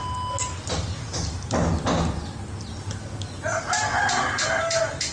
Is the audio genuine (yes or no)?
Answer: yes